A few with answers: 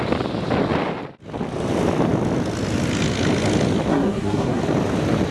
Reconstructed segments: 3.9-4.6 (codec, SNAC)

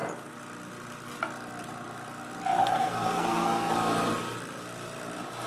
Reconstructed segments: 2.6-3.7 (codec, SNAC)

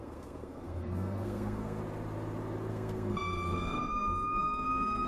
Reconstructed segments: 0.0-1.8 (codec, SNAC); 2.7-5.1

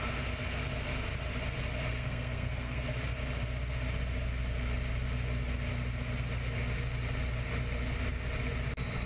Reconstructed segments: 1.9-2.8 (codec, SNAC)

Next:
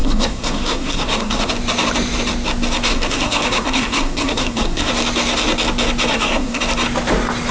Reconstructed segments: 0.0-1.5 (codec, SNAC); 2.9-4.9; 6.1-6.6

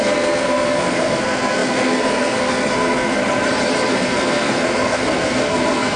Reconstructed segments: 0.0-3.2 (codec, SNAC); 3.9-6.0